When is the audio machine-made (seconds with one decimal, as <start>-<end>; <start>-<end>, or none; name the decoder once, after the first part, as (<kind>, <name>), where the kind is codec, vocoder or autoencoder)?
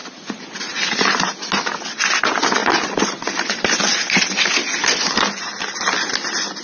none